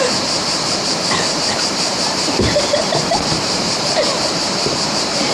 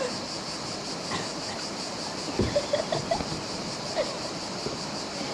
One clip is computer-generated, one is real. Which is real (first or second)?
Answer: second